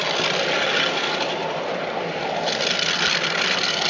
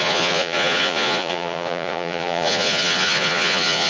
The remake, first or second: second